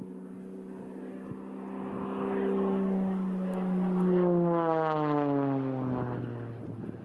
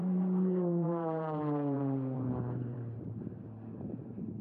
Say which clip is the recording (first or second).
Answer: first